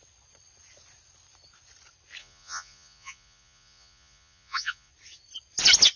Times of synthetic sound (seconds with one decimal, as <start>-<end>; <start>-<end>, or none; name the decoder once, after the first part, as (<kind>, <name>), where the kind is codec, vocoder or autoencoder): 2.2-4.9 (vocoder, Vocos)